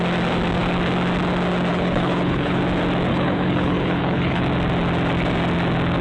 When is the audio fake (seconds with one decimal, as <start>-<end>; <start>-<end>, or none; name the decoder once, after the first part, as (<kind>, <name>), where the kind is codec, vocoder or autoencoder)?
1.7-2.6 (codec, HILCodec); 3.1-4.4